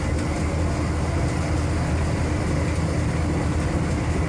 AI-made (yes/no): no